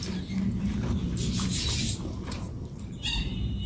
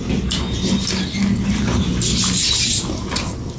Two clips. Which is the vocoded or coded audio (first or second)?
first